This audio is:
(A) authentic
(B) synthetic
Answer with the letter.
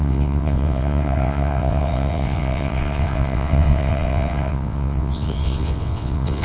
B